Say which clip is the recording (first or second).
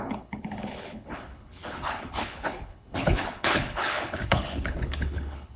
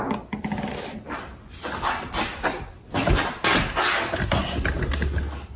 second